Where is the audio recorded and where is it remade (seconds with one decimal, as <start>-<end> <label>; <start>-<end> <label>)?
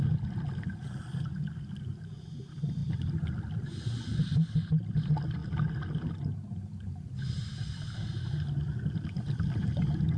0.0-10.2 recorded